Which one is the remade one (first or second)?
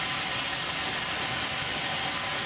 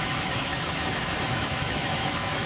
second